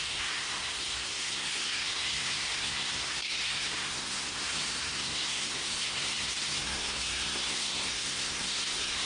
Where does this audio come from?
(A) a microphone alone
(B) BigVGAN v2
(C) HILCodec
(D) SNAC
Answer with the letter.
D